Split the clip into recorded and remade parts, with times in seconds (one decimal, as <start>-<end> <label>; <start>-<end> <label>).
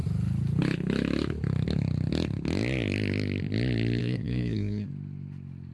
0.0-4.0 recorded; 4.0-4.9 remade; 4.9-5.7 recorded